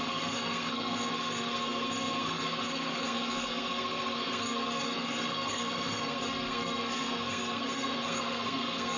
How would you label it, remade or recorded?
remade